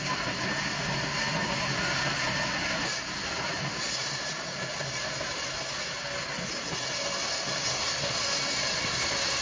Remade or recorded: recorded